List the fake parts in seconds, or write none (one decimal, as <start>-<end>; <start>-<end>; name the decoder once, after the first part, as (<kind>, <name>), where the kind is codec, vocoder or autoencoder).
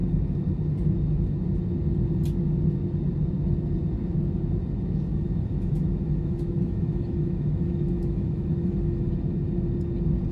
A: 5.1-9.1 (autoencoder, DAC-VAE)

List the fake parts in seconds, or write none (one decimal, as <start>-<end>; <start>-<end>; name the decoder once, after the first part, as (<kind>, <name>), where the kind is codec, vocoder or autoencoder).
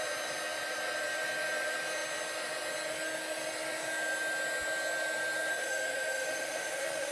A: 5.5-7.1 (autoencoder, DAC-VAE)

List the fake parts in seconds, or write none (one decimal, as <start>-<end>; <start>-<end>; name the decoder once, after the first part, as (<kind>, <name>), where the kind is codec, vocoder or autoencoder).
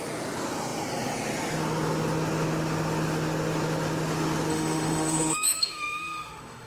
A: 4.5-6.7 (autoencoder, DAC-VAE)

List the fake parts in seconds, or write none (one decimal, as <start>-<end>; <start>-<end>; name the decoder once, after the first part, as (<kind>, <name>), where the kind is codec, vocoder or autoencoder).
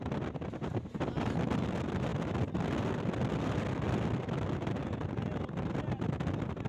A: none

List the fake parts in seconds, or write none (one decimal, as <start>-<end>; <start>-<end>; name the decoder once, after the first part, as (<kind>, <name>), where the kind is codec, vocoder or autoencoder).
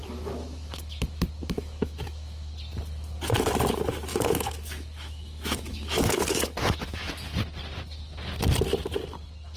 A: 0.0-1.0 (autoencoder, DAC-VAE); 1.4-2.5; 4.1-7.1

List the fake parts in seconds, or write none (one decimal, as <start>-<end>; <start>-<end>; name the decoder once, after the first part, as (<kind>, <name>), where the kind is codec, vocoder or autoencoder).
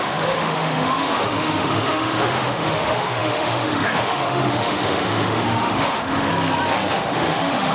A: 0.0-6.3 (autoencoder, DAC-VAE); 6.9-7.7